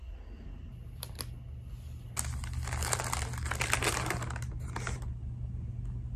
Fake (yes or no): no